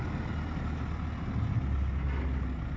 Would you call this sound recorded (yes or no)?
yes